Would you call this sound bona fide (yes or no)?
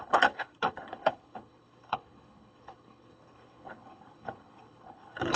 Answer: no